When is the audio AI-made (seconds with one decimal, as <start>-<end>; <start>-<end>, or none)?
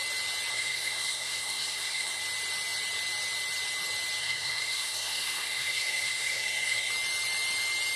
0.5-2.2; 4.2-6.9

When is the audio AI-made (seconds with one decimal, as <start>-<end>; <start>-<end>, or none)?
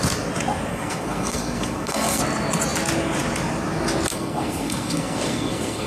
0.7-2.2; 4.1-5.9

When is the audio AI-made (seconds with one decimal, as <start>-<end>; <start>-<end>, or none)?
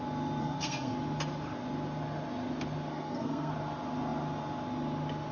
0.4-0.9; 2.9-3.5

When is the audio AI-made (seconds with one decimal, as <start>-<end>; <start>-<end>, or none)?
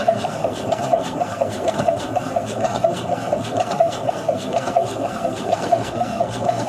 0.0-6.7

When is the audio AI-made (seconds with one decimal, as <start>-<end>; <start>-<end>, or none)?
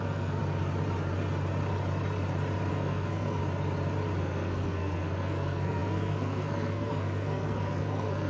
0.0-0.4; 2.7-3.4; 4.2-8.3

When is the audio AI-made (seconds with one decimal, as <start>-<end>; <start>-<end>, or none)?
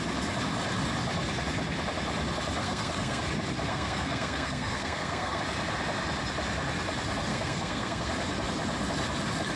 2.6-3.2; 3.7-5.4; 7.3-8.1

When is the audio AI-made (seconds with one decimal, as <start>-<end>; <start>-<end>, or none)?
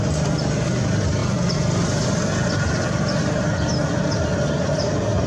none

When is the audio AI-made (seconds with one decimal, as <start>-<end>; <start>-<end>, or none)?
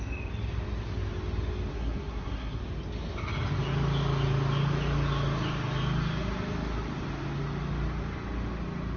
1.7-2.6